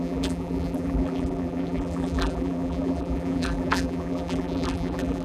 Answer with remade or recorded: remade